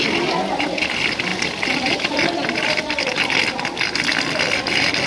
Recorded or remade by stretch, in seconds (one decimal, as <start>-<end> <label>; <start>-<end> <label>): 0.0-5.1 recorded